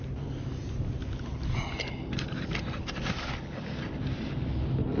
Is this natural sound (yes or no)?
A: yes